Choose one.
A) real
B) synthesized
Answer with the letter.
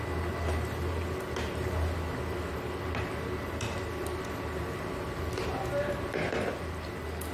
A